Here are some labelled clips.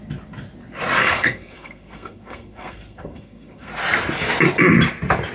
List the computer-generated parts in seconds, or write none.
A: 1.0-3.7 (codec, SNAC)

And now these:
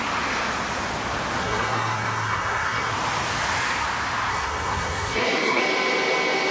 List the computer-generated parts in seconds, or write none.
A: 1.4-2.9 (codec, SNAC); 4.3-5.6

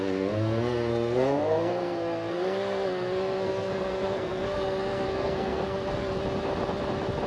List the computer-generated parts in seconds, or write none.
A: 0.0-6.2 (codec, SNAC)

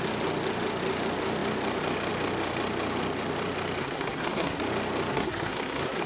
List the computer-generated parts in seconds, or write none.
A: 3.8-4.6 (codec, SNAC); 5.1-6.1